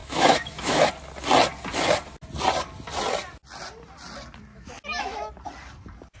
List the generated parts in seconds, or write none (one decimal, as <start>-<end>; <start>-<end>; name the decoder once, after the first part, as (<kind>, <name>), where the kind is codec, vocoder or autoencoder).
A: 0.0-0.9 (autoencoder, DAC-VAE); 4.5-5.3